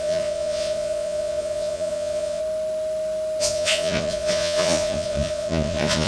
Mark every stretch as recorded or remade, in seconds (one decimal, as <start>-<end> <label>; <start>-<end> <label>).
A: 0.0-2.4 remade; 2.4-3.4 recorded; 3.4-6.1 remade